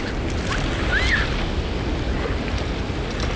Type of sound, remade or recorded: recorded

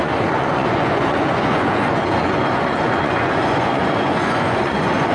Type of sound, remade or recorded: remade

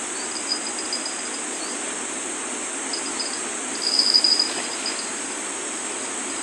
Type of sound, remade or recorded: recorded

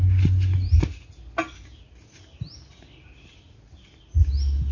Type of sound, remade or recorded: recorded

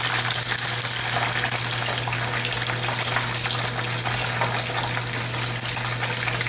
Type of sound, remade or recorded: recorded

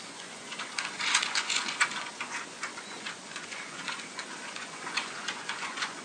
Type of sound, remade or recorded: remade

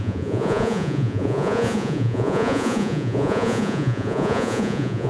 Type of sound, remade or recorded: remade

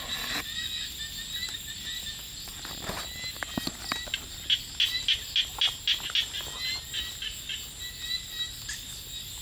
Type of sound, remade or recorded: recorded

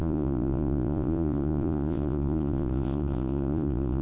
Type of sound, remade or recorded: remade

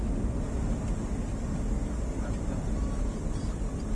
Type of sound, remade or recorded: recorded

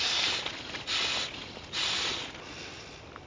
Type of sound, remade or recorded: recorded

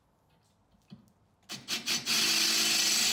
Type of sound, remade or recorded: recorded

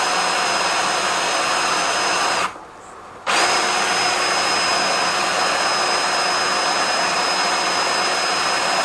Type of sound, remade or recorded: recorded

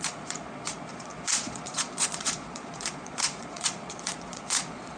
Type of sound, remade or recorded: remade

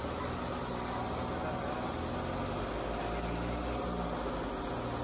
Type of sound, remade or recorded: recorded